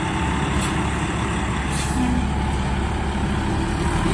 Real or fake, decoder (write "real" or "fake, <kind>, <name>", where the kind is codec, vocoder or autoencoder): real